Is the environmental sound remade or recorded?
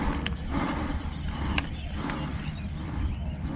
remade